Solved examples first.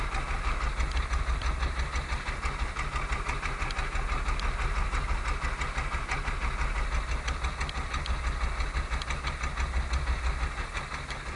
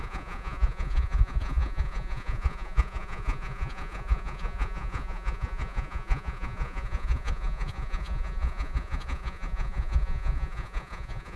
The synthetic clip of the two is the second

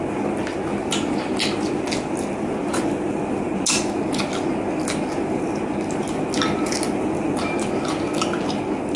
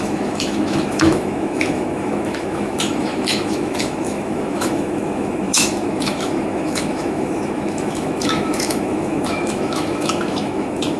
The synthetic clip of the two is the second